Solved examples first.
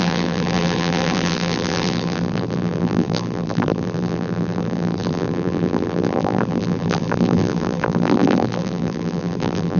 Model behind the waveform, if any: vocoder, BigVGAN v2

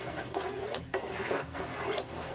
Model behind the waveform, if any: codec, SNAC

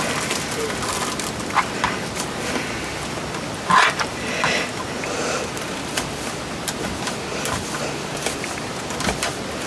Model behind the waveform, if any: none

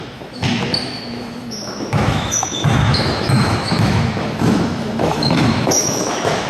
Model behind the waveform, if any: autoencoder, DAC-VAE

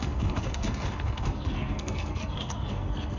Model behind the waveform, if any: codec, SNAC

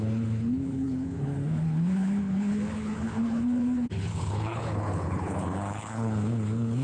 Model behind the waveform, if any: codec, HILCodec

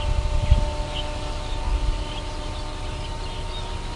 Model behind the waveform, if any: none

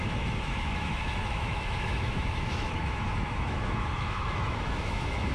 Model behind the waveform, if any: autoencoder, DAC-VAE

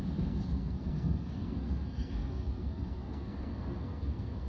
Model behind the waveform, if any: codec, SNAC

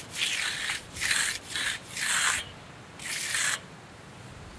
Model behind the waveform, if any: none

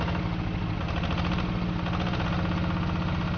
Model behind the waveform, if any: none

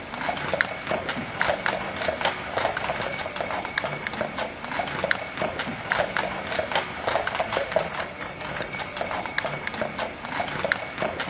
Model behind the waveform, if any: none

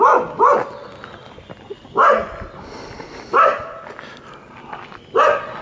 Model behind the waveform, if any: none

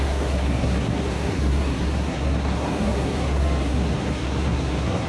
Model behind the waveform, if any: codec, SNAC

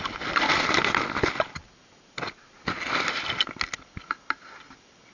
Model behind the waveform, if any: none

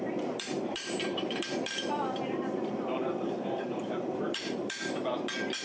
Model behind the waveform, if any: vocoder, BigVGAN v2